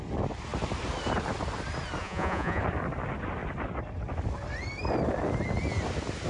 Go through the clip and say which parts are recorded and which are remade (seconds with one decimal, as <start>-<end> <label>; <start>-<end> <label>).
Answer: 0.0-2.0 recorded; 2.0-2.6 remade; 2.6-6.3 recorded